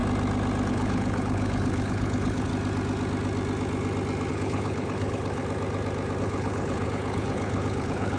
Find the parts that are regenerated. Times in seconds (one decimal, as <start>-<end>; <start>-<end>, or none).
0.7-2.5; 4.3-5.4; 6.2-8.2